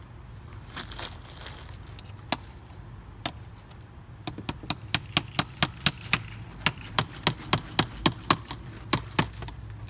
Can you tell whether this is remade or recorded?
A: recorded